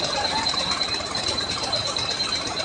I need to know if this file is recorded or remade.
remade